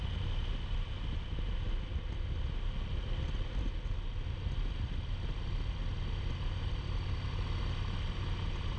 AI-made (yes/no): no